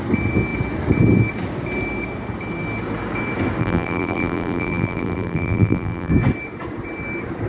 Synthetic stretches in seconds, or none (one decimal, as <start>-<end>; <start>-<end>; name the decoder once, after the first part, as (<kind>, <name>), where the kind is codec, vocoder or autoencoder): 3.6-6.1 (vocoder, BigVGAN v2)

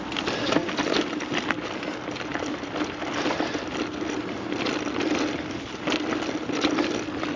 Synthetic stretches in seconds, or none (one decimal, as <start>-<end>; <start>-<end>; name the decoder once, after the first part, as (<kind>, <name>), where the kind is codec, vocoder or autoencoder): none